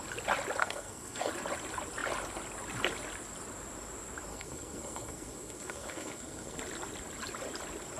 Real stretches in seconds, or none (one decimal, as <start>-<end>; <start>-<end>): 0.0-0.6; 1.3-4.3; 6.6-8.0